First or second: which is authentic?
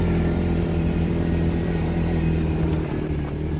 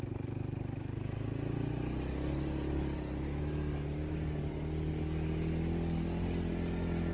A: second